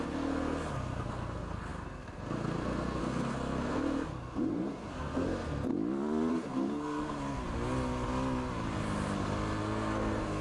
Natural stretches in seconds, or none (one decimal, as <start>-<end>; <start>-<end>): 5.7-6.3; 7.4-9.6